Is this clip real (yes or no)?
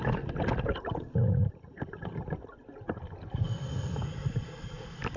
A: yes